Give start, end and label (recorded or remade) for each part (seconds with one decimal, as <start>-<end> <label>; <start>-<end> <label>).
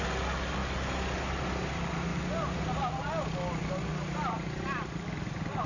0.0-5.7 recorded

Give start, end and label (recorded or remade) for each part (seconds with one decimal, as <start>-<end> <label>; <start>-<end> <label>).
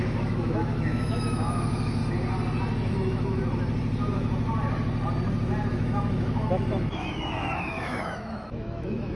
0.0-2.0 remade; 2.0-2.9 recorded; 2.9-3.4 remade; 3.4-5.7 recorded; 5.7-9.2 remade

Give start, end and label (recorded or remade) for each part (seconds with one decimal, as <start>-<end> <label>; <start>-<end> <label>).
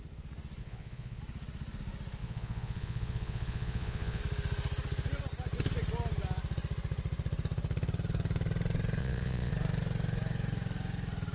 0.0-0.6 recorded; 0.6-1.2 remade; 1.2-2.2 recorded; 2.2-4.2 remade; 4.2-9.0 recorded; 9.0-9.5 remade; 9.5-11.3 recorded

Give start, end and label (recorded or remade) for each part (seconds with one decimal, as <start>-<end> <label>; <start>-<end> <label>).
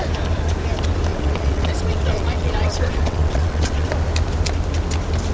0.0-1.1 recorded; 1.1-3.9 remade; 3.9-5.3 recorded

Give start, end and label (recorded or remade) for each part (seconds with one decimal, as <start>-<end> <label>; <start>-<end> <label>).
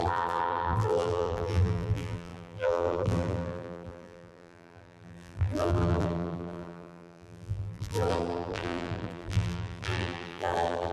0.0-10.9 remade